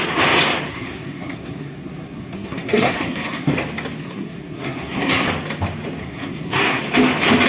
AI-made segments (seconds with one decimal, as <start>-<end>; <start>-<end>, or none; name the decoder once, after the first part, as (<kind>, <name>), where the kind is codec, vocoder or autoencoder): 0.7-3.5 (codec, SNAC); 4.0-5.3; 6.0-6.8